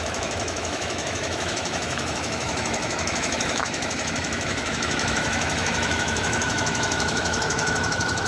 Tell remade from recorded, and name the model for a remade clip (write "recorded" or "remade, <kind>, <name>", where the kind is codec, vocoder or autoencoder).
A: remade, autoencoder, DAC-VAE